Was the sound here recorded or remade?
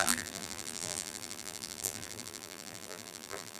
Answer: remade